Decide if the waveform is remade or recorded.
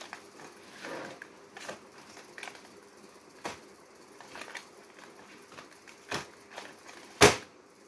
recorded